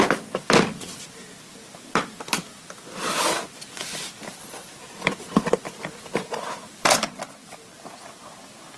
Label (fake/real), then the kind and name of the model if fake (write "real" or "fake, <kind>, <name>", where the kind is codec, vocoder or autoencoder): real